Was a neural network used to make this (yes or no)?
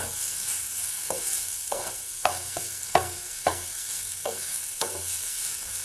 yes